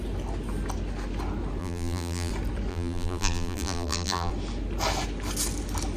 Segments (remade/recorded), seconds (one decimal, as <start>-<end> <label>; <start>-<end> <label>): 0.0-1.6 recorded; 1.6-2.3 remade; 2.3-2.7 recorded; 2.7-4.3 remade; 4.3-6.0 recorded